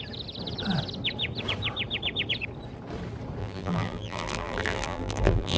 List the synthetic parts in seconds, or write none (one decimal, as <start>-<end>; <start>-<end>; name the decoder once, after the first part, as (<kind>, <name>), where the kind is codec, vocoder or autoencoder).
3.4-5.6 (vocoder, BigVGAN v2)